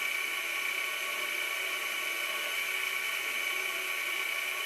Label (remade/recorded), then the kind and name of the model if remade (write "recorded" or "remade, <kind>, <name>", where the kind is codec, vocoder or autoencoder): recorded